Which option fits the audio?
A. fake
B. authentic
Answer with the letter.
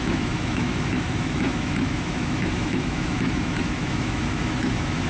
A